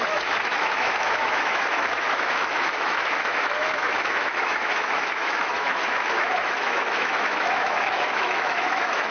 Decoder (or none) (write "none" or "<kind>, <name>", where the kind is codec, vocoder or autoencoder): autoencoder, DAC-VAE